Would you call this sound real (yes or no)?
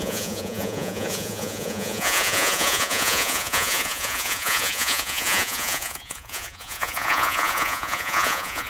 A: no